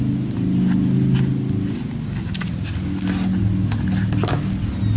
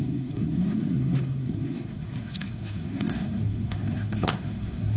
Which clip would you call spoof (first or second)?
second